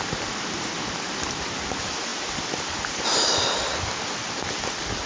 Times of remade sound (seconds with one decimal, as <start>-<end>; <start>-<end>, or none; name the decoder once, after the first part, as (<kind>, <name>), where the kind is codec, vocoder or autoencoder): none